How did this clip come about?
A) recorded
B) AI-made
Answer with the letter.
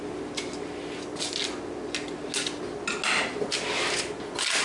A